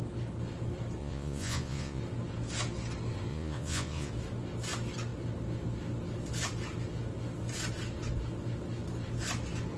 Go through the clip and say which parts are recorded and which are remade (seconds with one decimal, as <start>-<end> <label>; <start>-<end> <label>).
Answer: 0.0-1.0 recorded; 1.0-2.0 remade; 2.0-3.3 recorded; 3.3-4.1 remade; 4.1-9.8 recorded